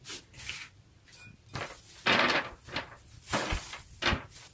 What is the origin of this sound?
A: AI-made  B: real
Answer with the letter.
B